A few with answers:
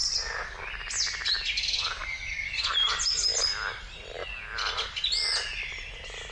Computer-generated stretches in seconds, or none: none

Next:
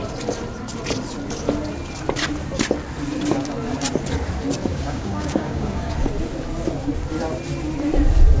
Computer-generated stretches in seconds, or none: 4.7-5.9 (codec, DAC)

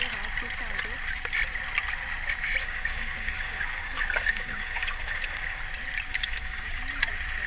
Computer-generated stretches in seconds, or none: 2.6-5.6 (codec, DAC); 6.1-6.8